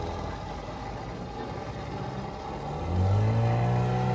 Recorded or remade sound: recorded